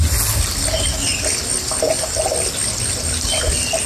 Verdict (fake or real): real